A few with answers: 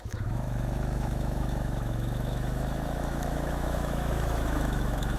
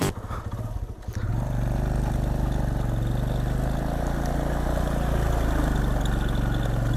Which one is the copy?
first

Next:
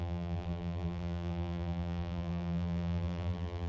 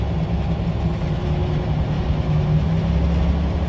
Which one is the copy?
first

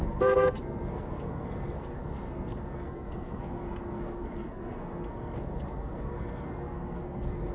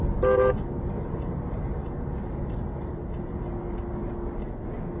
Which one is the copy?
first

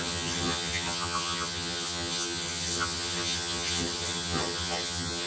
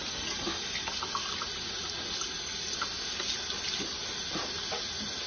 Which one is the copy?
first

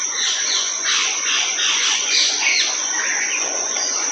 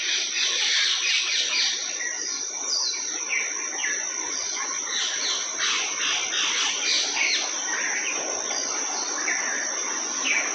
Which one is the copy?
first